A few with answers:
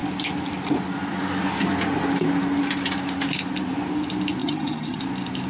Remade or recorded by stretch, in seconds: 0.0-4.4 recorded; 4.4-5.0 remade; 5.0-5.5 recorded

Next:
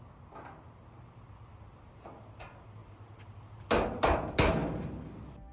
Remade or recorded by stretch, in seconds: 0.0-5.5 recorded

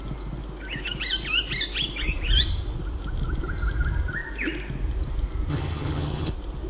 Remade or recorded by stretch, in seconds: 0.0-5.5 recorded; 5.5-6.3 remade; 6.3-6.7 recorded

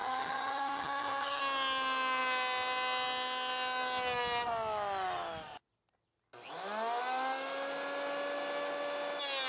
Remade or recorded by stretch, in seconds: 0.0-1.4 remade; 1.4-9.5 recorded

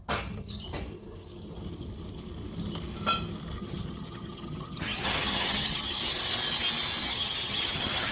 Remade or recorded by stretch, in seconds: 0.0-3.6 recorded; 3.6-6.0 remade; 6.0-7.0 recorded; 7.0-8.1 remade